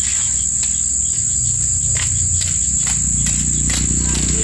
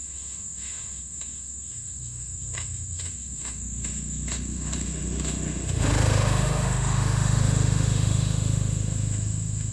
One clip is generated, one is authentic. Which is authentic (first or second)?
first